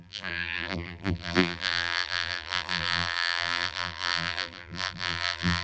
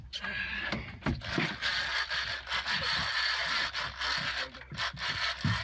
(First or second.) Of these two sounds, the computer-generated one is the first